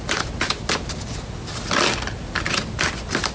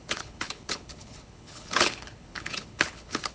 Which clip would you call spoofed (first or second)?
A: second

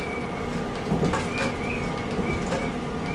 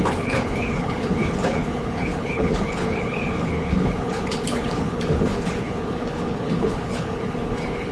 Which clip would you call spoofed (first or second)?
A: second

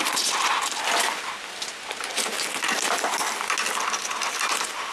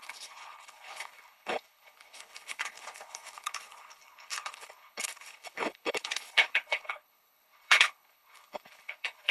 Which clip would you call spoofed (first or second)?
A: second